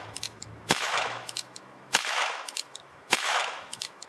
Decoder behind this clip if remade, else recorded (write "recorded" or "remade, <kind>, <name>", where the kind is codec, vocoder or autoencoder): remade, autoencoder, DAC-VAE